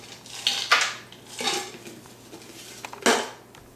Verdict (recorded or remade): recorded